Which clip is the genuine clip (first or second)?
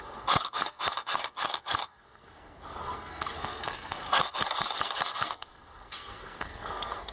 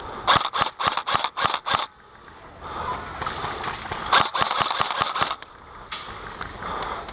second